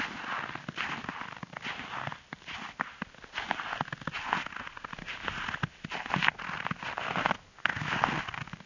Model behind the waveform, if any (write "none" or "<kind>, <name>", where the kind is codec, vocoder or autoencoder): none